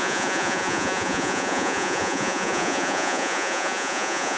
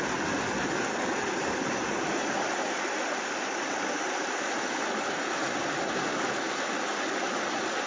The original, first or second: second